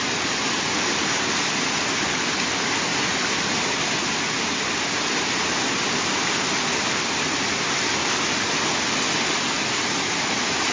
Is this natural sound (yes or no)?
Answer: yes